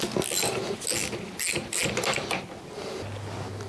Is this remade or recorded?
recorded